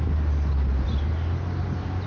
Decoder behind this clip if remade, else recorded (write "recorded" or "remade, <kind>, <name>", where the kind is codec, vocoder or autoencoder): recorded